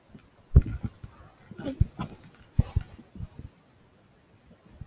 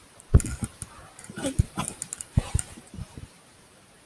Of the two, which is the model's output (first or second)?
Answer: second